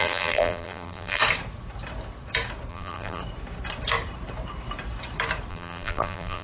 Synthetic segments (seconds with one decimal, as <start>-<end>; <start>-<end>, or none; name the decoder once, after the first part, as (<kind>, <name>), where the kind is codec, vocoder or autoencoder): 0.0-1.2 (vocoder, BigVGAN v2); 2.7-3.2; 5.5-6.4